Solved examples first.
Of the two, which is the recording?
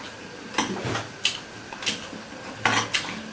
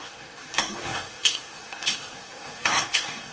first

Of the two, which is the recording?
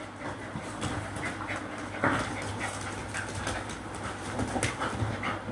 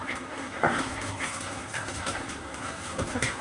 first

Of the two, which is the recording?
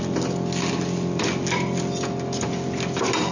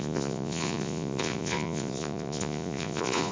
first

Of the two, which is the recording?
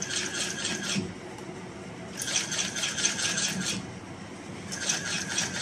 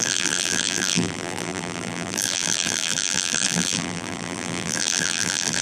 first